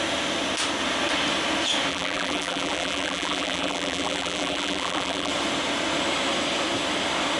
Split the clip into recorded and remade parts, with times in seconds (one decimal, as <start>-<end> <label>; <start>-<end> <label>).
0.0-1.9 recorded; 1.9-5.3 remade; 5.3-7.4 recorded

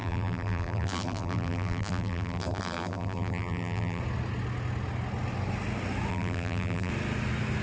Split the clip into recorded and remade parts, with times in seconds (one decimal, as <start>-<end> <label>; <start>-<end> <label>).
0.0-4.0 remade; 4.0-6.1 recorded; 6.1-6.9 remade; 6.9-7.6 recorded